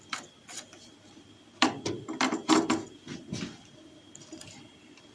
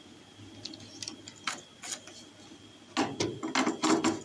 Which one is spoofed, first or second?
first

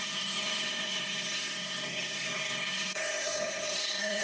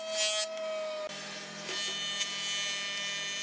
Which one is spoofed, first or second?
first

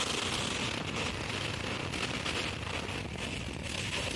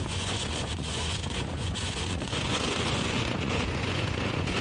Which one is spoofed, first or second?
second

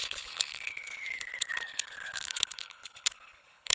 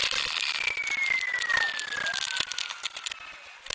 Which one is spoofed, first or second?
first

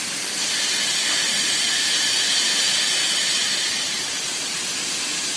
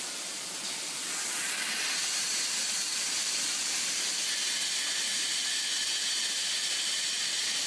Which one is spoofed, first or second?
second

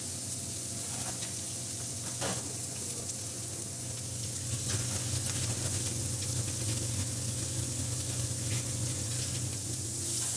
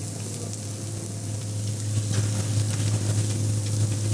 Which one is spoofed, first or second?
first